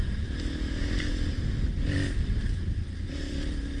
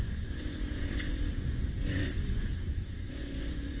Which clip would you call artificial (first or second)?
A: second